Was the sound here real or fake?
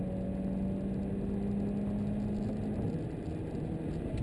real